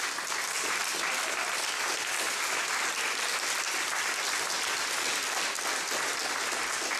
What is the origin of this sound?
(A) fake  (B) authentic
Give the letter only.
B